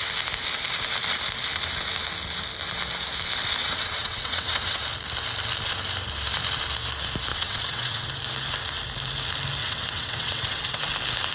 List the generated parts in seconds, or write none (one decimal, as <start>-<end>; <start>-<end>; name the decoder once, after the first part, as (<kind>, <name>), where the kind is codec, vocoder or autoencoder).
3.6-4.8 (vocoder, WaveNeXt); 7.3-8.1; 9.6-10.8